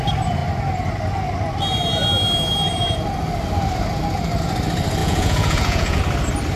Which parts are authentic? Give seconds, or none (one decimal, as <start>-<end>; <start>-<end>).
0.0-5.0; 6.0-6.6